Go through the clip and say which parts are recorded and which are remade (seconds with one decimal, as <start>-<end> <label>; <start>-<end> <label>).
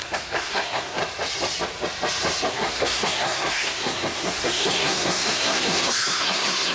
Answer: 0.0-1.0 remade; 1.0-2.5 recorded; 2.5-6.7 remade